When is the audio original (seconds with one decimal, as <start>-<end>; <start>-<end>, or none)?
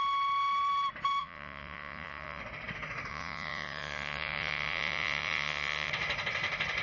0.0-1.2; 2.4-3.1; 5.9-6.8